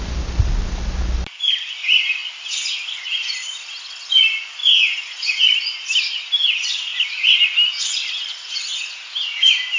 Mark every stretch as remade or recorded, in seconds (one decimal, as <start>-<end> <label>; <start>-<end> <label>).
0.0-4.6 recorded; 4.6-5.4 remade; 5.4-9.8 recorded